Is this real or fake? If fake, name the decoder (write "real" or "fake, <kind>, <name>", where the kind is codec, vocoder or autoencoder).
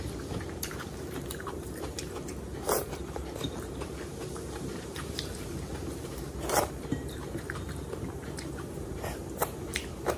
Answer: fake, vocoder, BigVGAN v2